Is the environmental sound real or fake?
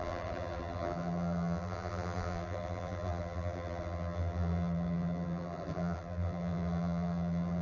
fake